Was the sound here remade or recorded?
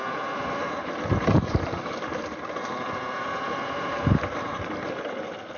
recorded